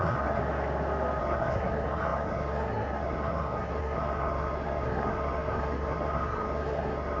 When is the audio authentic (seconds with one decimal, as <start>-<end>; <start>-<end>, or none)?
0.4-1.2